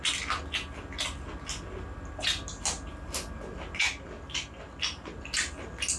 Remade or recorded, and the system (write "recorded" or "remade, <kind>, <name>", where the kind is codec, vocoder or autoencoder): recorded